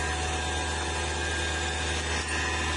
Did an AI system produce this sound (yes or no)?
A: no